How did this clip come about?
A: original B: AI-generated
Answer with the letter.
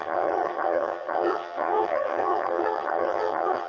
B